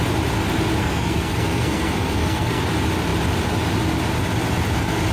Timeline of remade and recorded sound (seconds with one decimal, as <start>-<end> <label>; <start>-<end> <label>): 0.0-0.8 recorded; 0.8-2.6 remade; 2.6-5.1 recorded